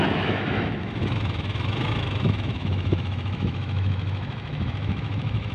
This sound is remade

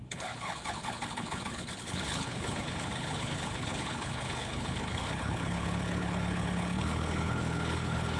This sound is remade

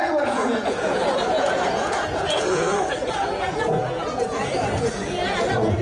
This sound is remade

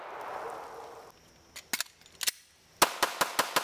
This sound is recorded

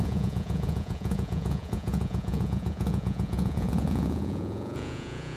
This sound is remade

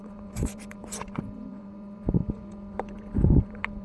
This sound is remade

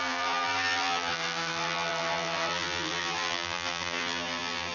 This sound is remade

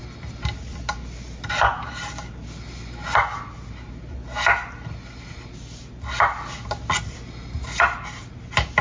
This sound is recorded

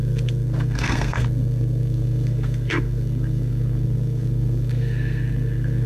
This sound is remade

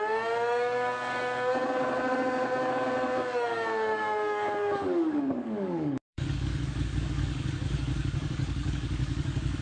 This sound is remade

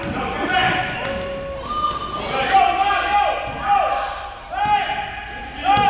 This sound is recorded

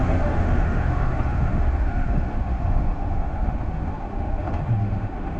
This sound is remade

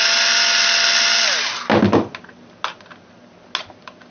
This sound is recorded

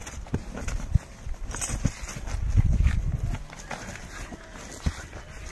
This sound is recorded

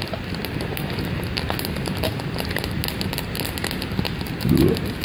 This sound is recorded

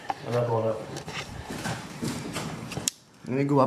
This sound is remade